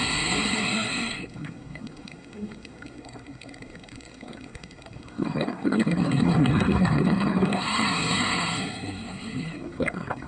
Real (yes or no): no